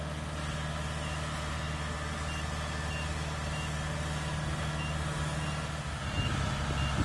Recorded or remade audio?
recorded